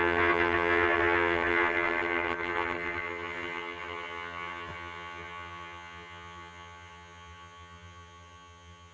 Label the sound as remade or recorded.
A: remade